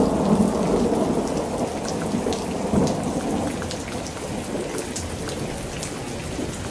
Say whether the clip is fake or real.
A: real